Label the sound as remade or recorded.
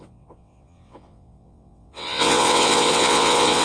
remade